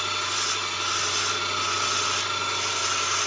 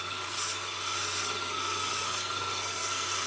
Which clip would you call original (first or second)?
first